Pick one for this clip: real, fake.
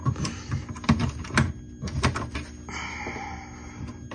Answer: real